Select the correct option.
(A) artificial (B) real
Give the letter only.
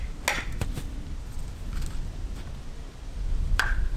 B